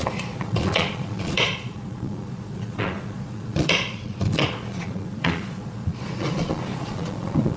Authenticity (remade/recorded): remade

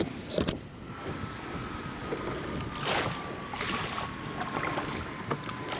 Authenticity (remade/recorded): recorded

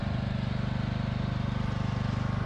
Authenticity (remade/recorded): recorded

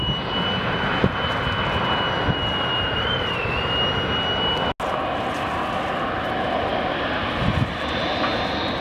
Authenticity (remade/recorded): recorded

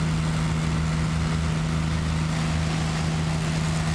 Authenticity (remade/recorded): recorded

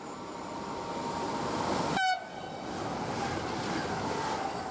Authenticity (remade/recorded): recorded